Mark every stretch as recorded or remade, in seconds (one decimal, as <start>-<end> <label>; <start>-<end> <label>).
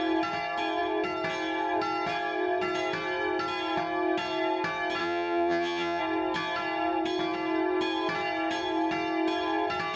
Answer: 0.0-5.0 recorded; 5.0-6.0 remade; 6.0-10.0 recorded